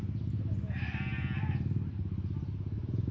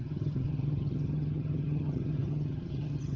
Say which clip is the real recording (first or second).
first